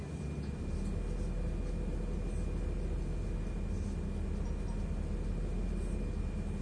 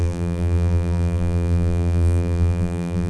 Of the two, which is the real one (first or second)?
first